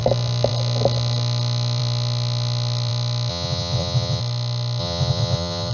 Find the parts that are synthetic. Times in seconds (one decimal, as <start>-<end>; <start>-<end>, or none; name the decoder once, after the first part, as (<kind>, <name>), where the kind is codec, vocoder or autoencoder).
3.3-4.2 (vocoder, Vocos); 4.8-5.7

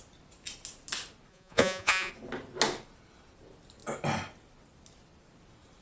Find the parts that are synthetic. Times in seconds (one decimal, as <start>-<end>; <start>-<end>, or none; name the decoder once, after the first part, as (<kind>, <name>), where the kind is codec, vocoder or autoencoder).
1.3-2.1 (vocoder, Vocos)

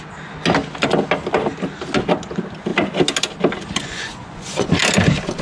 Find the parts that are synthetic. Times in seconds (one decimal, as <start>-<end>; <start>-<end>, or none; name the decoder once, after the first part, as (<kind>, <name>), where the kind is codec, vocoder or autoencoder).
3.8-4.8 (vocoder, Vocos)

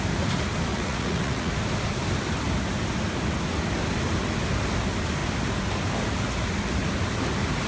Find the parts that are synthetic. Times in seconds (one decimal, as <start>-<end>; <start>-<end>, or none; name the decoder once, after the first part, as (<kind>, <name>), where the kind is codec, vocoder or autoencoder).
0.7-1.5 (vocoder, Vocos)

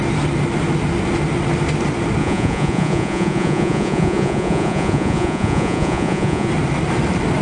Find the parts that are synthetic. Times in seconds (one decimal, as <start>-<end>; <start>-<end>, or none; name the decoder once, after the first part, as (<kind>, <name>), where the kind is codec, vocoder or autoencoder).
2.2-6.5 (vocoder, Vocos)

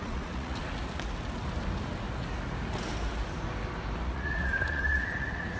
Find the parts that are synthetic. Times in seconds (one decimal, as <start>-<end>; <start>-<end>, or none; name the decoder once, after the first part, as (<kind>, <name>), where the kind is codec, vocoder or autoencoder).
0.0-0.6 (vocoder, Vocos); 4.0-5.6